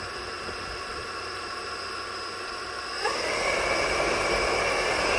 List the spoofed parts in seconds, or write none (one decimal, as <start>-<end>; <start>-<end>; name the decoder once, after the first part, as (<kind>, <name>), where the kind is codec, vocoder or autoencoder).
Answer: none